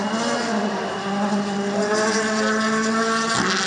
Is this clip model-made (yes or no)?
no